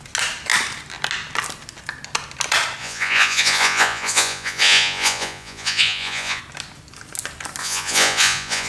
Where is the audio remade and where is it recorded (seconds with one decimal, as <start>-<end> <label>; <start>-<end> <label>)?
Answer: 0.0-2.8 recorded; 2.8-6.4 remade; 6.4-7.6 recorded; 7.6-8.7 remade